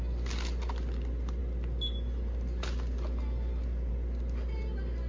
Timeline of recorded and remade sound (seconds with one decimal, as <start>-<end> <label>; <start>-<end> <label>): 0.0-5.1 recorded

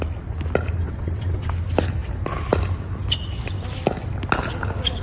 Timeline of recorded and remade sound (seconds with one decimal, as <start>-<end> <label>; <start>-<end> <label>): 0.0-0.8 recorded; 0.8-1.5 remade; 1.5-5.0 recorded

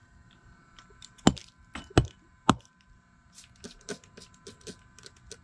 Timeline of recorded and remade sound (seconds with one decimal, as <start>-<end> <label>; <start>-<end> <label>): 0.0-5.4 recorded

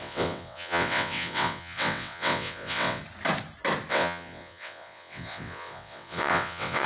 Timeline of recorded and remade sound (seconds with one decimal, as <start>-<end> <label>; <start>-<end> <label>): 0.0-3.0 remade; 3.0-3.9 recorded; 3.9-6.9 remade